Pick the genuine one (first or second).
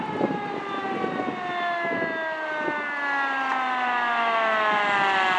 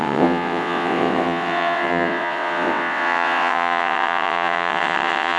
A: first